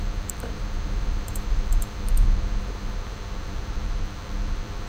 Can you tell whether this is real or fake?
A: fake